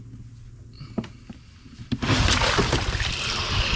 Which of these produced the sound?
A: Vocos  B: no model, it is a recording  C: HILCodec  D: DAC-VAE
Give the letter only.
B